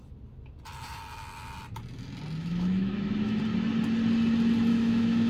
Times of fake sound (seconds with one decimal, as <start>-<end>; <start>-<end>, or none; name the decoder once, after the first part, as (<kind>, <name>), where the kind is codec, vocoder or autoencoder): 2.4-3.4 (autoencoder, DAC-VAE); 4.7-5.3